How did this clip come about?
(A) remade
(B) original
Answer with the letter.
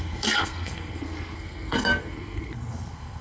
A